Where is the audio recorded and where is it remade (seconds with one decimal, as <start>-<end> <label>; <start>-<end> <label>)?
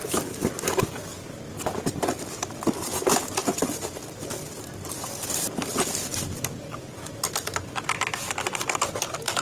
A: 0.0-1.4 remade; 1.4-3.4 recorded; 3.4-7.1 remade; 7.1-9.4 recorded